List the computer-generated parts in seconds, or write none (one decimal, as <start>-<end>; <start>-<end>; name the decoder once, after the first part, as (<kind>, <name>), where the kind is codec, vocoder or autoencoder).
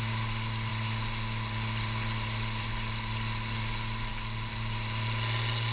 none